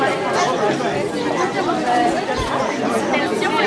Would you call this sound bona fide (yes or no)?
yes